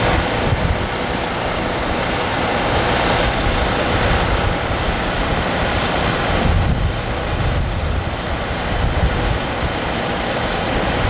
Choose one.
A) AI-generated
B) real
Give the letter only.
B